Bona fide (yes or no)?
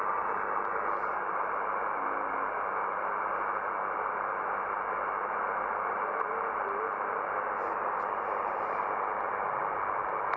yes